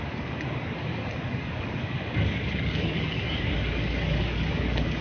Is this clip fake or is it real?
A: fake